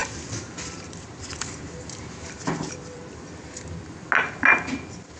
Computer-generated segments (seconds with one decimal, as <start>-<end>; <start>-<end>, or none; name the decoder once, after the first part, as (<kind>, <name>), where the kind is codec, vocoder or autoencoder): 0.0-3.0 (vocoder, BigVGAN v2)